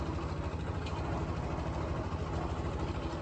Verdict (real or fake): real